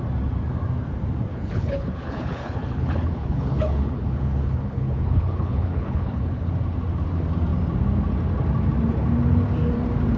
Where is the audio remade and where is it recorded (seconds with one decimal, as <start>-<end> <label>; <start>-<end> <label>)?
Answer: 0.0-1.3 recorded; 1.3-6.5 remade; 6.5-10.2 recorded